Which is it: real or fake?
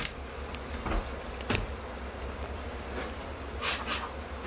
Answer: real